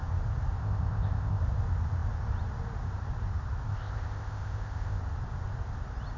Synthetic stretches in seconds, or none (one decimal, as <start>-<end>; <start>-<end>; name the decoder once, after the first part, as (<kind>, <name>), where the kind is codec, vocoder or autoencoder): 0.6-1.4 (codec, ZipCodec); 3.7-5.0

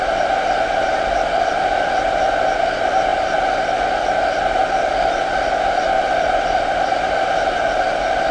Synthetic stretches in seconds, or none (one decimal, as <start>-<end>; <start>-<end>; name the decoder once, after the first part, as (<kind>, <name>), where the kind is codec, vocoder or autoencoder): none

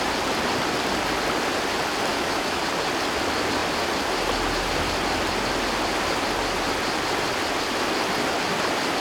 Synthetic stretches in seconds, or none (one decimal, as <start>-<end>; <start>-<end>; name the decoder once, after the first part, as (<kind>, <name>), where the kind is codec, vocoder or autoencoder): 2.1-2.6 (autoencoder, DAC-VAE)

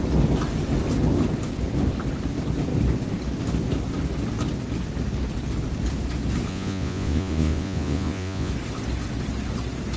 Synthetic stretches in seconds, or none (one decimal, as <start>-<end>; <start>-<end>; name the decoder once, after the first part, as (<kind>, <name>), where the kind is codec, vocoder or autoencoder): 6.5-8.5 (vocoder, Vocos)

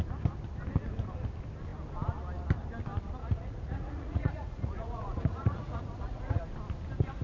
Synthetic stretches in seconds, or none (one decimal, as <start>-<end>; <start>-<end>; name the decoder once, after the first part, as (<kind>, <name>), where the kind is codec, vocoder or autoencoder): 3.2-6.4 (vocoder, Vocos)